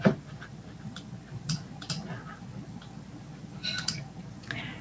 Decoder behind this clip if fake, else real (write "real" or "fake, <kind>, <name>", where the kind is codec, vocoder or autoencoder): real